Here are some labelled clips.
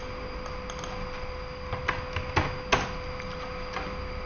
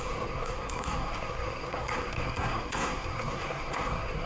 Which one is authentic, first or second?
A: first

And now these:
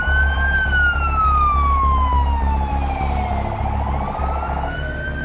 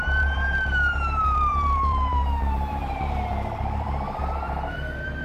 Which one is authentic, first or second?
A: first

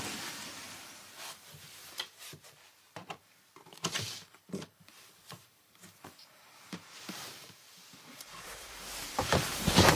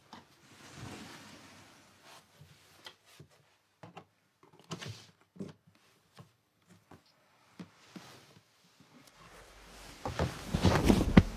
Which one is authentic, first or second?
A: second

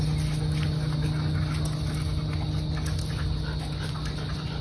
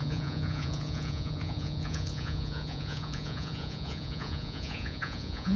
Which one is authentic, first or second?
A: first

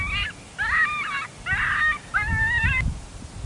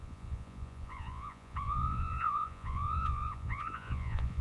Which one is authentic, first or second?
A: first